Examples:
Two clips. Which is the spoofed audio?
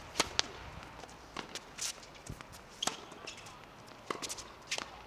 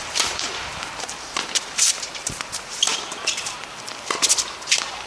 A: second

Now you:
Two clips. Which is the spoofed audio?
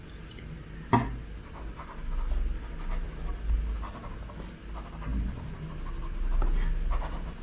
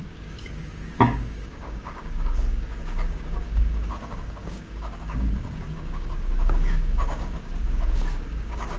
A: second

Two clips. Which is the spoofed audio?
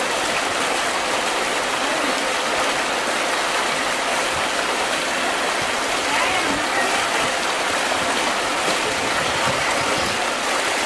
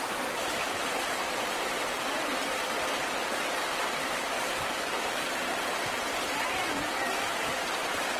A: second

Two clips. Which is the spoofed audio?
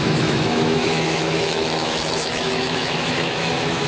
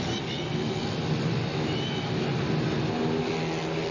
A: first